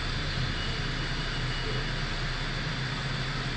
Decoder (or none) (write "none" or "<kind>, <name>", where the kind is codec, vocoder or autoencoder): none